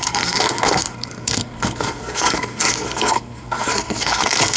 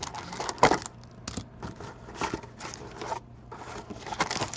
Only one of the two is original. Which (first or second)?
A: second